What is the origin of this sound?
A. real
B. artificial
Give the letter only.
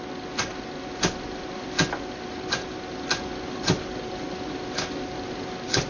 A